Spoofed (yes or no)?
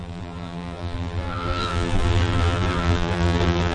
yes